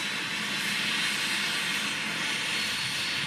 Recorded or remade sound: recorded